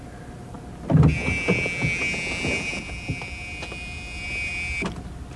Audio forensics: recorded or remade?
recorded